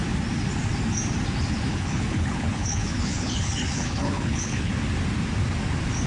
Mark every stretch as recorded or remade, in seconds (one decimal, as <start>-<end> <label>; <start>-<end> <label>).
0.0-1.7 recorded; 1.7-4.7 remade; 4.7-6.1 recorded